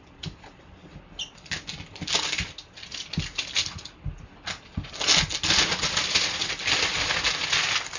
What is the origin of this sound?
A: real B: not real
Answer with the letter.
A